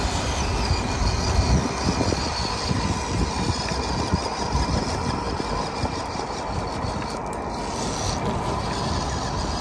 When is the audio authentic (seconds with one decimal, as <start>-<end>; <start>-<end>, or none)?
0.0-9.6